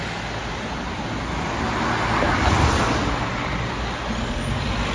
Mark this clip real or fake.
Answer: real